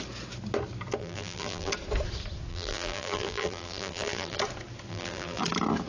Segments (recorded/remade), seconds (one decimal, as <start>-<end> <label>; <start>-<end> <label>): 0.0-1.0 recorded; 1.0-1.7 remade; 1.7-2.5 recorded; 2.5-4.4 remade; 4.4-4.9 recorded; 4.9-5.4 remade; 5.4-5.9 recorded